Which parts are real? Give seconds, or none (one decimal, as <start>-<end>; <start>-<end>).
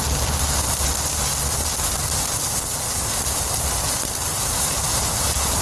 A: 0.0-4.3